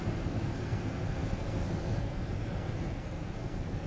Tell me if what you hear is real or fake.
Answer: fake